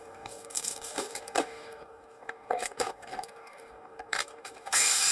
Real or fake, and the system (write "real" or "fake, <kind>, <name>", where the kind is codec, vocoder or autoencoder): fake, codec, DAC